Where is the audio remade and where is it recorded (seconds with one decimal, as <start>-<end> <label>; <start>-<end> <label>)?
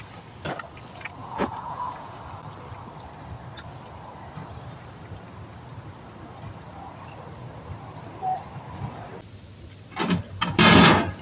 0.0-1.2 recorded; 1.2-2.2 remade; 2.2-11.2 recorded